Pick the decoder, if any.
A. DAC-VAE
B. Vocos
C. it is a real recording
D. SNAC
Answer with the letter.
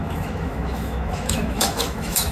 A